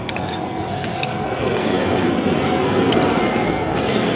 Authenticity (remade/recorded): remade